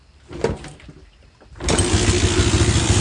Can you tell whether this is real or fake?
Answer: real